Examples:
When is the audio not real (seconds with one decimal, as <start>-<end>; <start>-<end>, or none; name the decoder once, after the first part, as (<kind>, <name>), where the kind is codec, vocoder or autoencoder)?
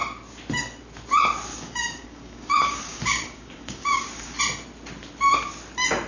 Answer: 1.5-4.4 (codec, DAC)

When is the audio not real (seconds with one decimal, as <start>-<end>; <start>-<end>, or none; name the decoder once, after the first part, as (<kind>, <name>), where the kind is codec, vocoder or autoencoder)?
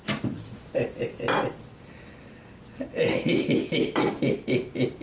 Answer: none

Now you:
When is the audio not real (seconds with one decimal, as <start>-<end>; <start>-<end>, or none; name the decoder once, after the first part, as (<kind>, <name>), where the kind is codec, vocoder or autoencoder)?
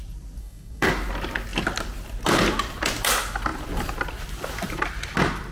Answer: 0.4-0.9 (codec, DAC)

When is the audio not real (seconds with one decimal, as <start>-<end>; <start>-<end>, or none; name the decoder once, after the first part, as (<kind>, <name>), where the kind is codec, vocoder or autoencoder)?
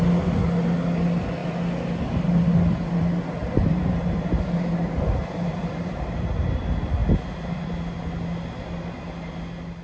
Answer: 3.6-6.6 (vocoder, BigVGAN v2)